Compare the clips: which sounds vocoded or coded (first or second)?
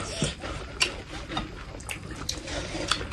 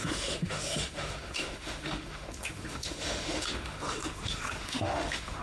second